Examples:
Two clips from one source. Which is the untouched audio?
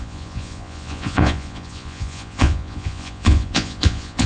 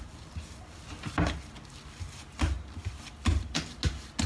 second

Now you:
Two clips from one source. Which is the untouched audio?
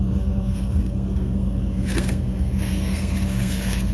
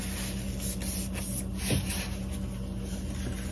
second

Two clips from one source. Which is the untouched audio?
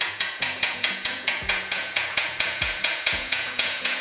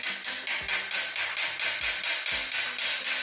second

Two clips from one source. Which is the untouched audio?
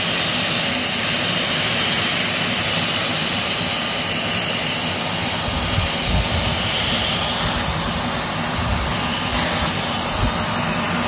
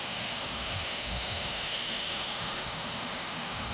first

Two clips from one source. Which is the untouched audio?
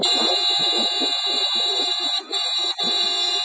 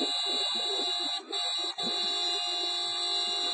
second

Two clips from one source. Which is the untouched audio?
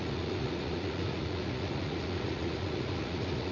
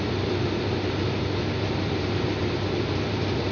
second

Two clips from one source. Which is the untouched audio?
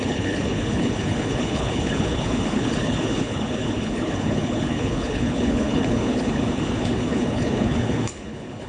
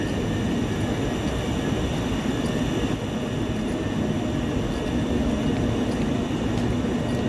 second